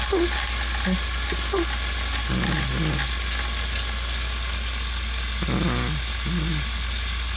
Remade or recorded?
recorded